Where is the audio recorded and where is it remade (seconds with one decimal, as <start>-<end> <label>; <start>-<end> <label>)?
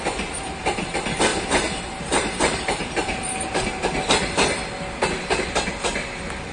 0.0-1.3 recorded; 1.3-3.5 remade; 3.5-6.5 recorded